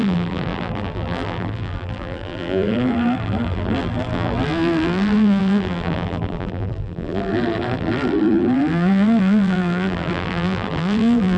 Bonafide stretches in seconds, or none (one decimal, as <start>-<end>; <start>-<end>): none